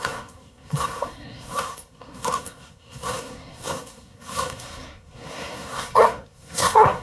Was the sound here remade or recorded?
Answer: remade